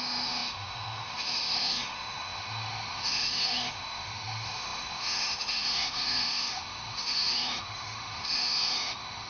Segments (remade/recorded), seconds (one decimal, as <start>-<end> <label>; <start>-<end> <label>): 0.0-9.3 remade